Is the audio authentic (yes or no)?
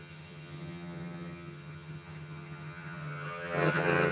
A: no